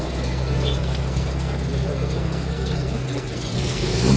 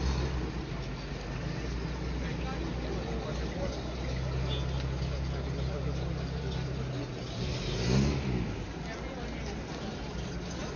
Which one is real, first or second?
second